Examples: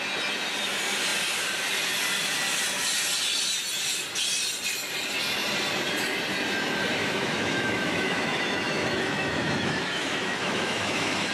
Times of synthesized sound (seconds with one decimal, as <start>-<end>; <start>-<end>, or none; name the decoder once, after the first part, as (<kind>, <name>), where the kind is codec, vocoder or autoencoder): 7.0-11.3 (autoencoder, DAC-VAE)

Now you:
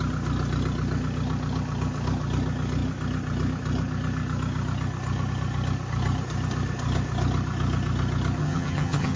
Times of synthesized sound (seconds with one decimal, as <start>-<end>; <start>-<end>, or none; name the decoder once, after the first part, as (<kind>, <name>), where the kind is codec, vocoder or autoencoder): 8.4-9.2 (vocoder, HiFi-GAN)

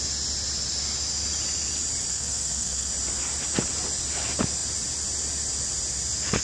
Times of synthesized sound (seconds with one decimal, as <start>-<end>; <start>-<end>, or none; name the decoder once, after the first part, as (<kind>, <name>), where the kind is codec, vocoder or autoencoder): 2.1-2.9 (codec, SNAC)

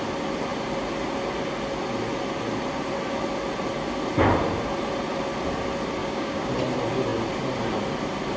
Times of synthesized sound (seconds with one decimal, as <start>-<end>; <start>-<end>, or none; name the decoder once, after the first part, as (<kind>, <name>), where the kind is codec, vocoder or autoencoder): 6.0-6.5 (codec, DAC)

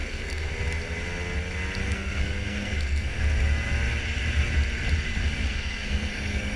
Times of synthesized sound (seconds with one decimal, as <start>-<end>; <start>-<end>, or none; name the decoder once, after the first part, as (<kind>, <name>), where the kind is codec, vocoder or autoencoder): 0.0-0.5 (codec, SNAC); 1.8-3.2; 5.2-6.6

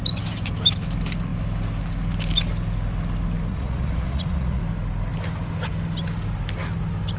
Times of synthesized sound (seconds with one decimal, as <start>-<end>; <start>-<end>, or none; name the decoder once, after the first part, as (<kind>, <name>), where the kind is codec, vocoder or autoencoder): 3.5-4.6 (vocoder, Vocos)

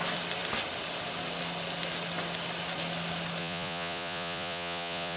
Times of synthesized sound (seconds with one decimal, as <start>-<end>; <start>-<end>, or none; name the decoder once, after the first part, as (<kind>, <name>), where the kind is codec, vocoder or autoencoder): 3.4-5.2 (vocoder, Vocos)